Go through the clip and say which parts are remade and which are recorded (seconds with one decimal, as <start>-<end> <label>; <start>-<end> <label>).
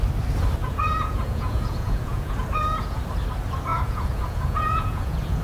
0.0-0.6 recorded; 0.6-3.0 remade; 3.0-3.7 recorded; 3.7-5.4 remade